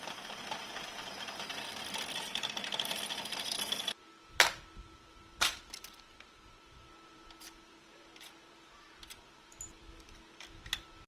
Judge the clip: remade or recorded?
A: remade